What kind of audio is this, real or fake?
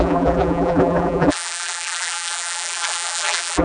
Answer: fake